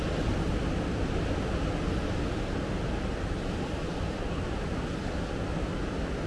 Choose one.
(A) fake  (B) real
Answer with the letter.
B